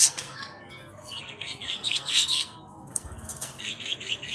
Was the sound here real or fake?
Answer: fake